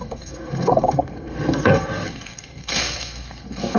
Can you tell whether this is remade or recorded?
remade